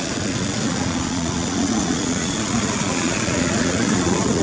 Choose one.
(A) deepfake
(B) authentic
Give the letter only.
A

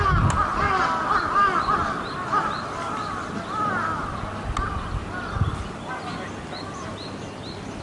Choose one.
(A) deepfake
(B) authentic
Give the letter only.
B